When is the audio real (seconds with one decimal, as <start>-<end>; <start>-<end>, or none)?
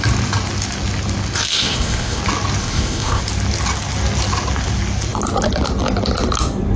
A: 0.0-1.5; 2.2-2.6; 3.2-6.8